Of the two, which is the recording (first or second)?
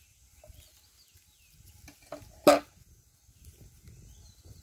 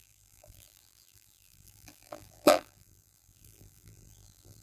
first